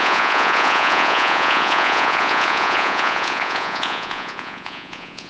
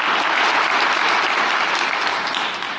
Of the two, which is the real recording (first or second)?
second